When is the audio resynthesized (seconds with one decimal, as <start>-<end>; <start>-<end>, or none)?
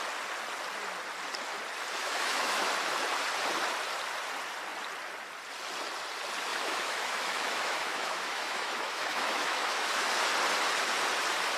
2.0-2.7; 6.5-10.2